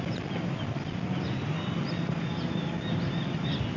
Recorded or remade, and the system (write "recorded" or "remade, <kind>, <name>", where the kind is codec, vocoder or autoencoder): recorded